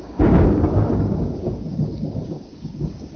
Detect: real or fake fake